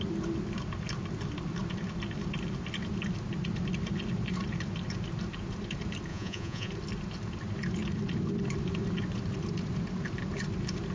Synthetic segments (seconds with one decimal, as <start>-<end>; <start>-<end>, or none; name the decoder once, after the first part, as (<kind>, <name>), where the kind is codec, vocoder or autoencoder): 6.1-6.7 (vocoder, Vocos)